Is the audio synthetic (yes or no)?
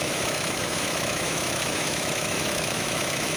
yes